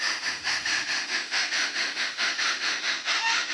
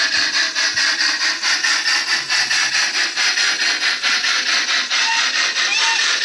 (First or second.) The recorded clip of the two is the second